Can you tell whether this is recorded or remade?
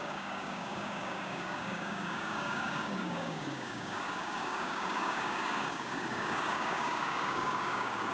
remade